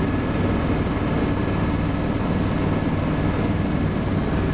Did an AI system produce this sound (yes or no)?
no